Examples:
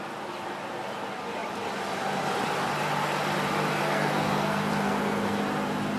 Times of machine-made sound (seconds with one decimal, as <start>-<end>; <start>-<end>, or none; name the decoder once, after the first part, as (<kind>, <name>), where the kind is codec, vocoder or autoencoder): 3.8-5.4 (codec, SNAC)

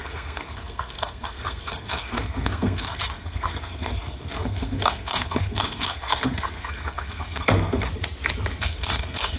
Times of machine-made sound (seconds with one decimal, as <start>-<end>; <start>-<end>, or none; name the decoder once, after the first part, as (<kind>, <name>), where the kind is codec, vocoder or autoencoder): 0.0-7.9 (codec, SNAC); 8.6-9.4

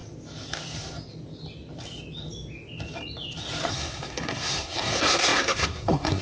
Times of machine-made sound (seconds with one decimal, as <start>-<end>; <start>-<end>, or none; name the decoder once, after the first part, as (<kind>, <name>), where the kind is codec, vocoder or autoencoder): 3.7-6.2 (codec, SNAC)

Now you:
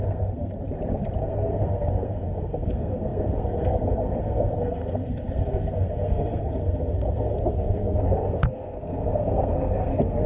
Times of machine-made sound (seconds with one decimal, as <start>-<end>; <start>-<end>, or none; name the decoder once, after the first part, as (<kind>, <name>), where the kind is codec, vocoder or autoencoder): 0.0-0.5 (codec, SNAC); 1.2-10.3

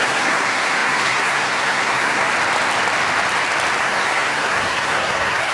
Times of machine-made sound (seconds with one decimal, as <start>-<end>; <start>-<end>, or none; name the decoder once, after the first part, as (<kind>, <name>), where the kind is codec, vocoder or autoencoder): 0.0-2.3 (codec, SNAC); 3.8-5.5

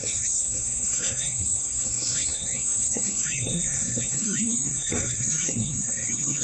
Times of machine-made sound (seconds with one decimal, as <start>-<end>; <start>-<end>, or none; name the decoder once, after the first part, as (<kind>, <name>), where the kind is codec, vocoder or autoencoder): 0.0-6.4 (codec, SNAC)